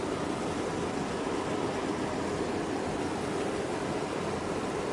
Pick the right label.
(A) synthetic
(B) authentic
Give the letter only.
A